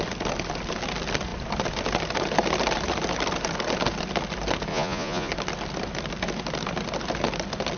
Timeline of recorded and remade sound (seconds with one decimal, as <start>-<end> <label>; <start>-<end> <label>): 0.0-4.7 recorded; 4.7-5.3 remade; 5.3-7.8 recorded